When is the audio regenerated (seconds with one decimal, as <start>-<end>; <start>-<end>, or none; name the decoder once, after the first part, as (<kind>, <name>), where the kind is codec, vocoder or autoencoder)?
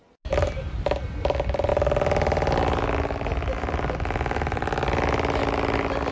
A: none